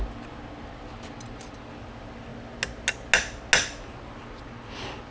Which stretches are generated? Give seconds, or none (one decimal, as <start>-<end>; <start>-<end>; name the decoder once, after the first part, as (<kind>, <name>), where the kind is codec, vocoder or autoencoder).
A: none